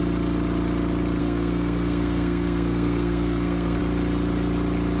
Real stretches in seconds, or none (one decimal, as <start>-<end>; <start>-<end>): 0.0-1.2; 3.8-5.0